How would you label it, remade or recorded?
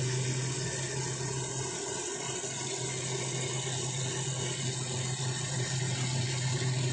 recorded